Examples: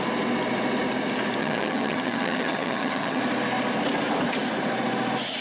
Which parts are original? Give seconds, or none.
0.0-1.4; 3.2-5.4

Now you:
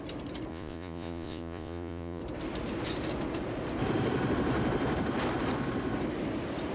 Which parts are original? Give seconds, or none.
0.0-0.5; 2.2-6.7

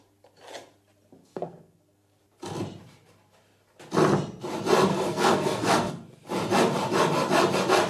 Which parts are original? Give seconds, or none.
0.0-1.2; 2.2-4.9; 5.9-7.9

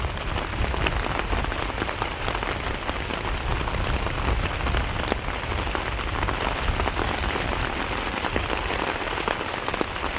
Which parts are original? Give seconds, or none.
0.0-10.2

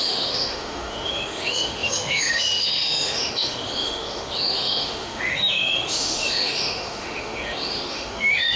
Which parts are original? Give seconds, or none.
none

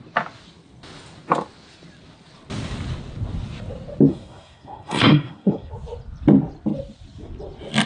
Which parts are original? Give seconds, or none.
0.0-4.1; 5.7-7.9

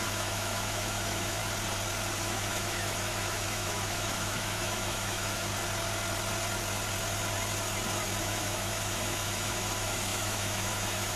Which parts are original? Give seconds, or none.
1.4-2.2; 5.5-8.2